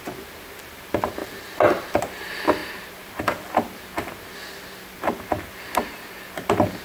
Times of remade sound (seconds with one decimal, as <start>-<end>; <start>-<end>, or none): 1.2-2.0; 2.6-3.4